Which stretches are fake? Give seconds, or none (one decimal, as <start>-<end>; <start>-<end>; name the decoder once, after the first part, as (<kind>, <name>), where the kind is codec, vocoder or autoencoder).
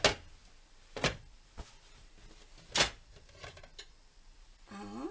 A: none